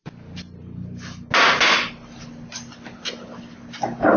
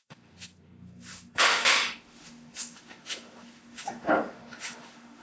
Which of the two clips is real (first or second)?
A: first